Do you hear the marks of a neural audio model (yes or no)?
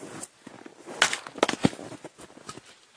no